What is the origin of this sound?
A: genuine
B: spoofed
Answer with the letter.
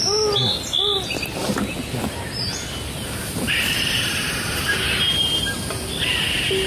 A